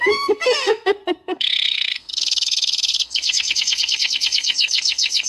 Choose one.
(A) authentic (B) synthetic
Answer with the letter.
B